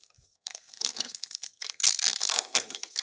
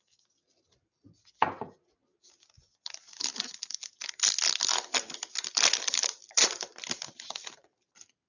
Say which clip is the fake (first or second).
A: first